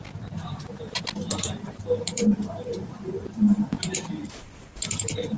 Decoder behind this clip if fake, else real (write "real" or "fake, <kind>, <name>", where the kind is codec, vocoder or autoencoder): fake, vocoder, BigVGAN v2